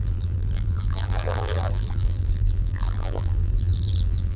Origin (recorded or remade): remade